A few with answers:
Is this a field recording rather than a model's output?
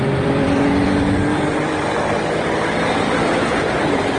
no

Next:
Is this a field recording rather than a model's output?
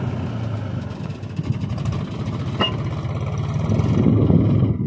yes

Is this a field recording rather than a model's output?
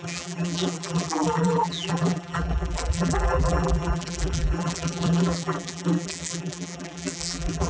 no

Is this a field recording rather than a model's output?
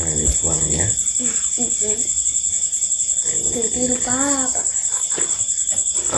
yes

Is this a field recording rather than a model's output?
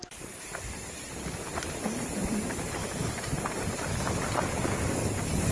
yes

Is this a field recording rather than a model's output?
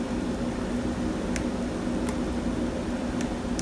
yes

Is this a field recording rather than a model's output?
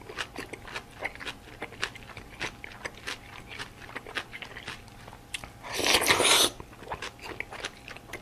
yes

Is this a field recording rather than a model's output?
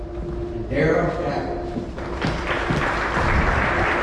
yes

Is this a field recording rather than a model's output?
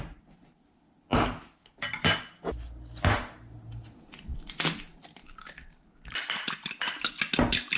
yes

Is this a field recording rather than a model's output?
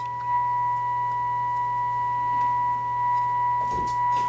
yes